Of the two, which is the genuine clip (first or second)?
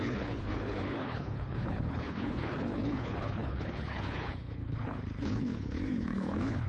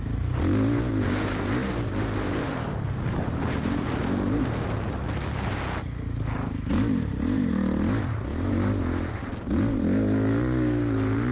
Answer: second